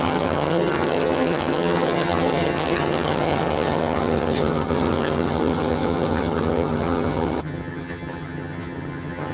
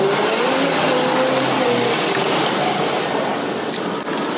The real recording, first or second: second